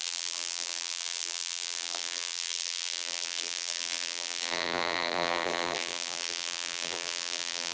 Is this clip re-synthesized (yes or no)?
yes